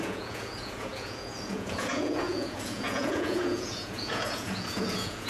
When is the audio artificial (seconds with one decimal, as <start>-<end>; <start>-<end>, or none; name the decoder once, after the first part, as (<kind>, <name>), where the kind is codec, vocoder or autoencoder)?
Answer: 0.0-5.3 (vocoder, Vocos)